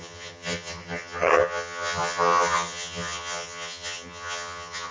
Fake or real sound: fake